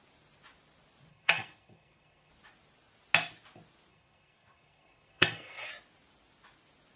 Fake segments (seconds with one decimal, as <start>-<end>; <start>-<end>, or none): 1.1-2.3; 3.9-5.7